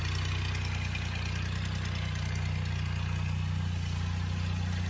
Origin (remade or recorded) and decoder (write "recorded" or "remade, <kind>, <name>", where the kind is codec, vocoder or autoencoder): recorded